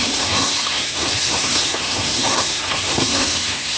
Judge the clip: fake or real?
fake